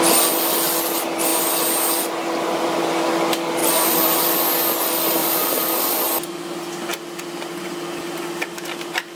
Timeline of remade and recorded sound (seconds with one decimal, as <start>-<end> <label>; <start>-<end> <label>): 0.0-3.6 recorded; 3.6-4.3 remade; 4.3-5.2 recorded; 5.2-6.0 remade; 6.0-9.2 recorded